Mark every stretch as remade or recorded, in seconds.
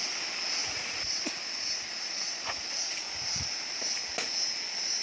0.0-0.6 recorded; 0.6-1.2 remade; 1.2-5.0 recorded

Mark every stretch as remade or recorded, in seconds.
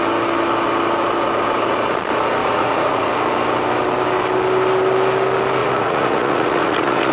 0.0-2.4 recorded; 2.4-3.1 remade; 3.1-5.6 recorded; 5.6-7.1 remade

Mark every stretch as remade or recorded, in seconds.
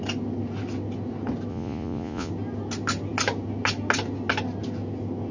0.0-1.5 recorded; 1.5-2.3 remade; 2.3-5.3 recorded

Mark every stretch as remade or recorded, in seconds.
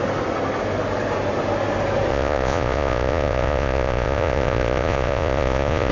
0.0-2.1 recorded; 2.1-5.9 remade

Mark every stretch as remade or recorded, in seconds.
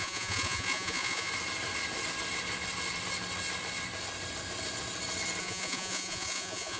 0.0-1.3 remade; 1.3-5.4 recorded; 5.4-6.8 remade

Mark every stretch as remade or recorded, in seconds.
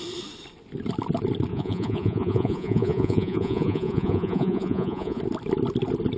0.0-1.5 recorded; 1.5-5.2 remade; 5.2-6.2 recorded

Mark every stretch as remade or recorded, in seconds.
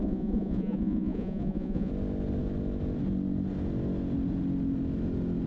0.0-1.9 remade; 1.9-5.5 recorded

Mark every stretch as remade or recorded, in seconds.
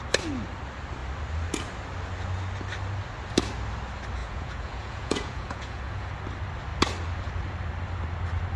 0.0-4.2 recorded; 4.2-6.1 remade; 6.1-8.6 recorded